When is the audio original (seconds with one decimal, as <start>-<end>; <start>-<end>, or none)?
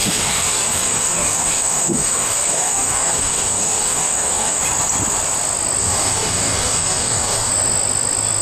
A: 4.6-5.8; 7.5-8.4